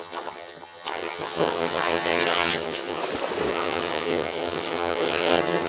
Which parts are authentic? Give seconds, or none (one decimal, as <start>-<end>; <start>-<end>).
3.0-3.5